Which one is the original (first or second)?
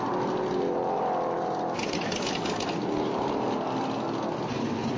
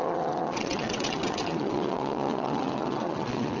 first